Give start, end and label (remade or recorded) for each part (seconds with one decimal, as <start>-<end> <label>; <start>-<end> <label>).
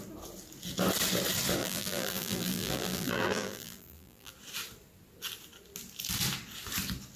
0.0-1.6 recorded; 1.6-4.3 remade; 4.3-7.2 recorded